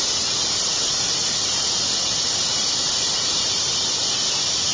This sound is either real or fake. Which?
real